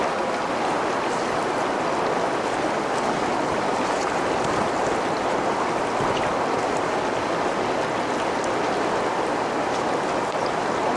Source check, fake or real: real